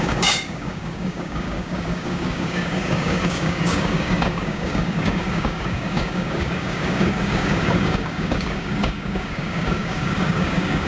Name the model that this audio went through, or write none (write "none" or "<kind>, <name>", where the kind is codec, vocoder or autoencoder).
codec, DAC